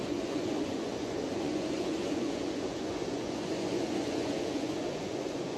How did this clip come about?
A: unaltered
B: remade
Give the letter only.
B